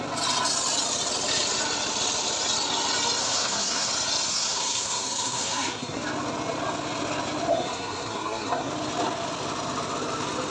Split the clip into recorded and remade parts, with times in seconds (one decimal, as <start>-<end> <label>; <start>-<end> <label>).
0.0-3.2 recorded; 3.2-3.9 remade; 3.9-4.3 recorded; 4.3-6.0 remade; 6.0-7.5 recorded; 7.5-8.7 remade; 8.7-10.5 recorded